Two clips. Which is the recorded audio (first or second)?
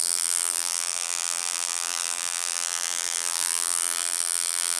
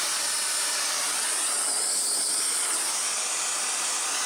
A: second